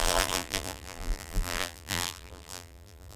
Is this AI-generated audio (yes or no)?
yes